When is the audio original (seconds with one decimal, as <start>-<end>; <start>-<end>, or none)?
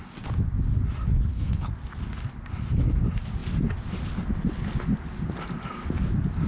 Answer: 0.0-1.1; 1.7-6.5